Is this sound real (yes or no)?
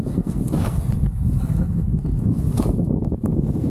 no